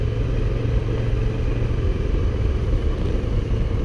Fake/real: real